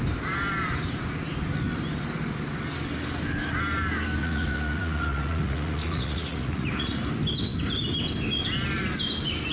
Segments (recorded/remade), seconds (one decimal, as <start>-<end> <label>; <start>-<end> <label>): 0.0-4.2 recorded; 4.2-7.0 remade; 7.0-9.5 recorded